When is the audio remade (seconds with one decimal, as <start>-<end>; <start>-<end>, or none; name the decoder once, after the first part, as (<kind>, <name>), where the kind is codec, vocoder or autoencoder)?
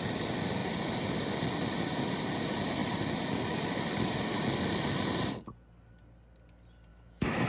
6.9-7.5 (autoencoder, DAC-VAE)